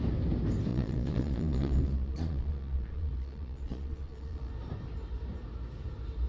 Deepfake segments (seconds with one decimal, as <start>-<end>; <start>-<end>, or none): 0.7-4.5